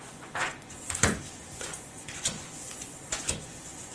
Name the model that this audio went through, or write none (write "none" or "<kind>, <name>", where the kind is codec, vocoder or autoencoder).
vocoder, Vocos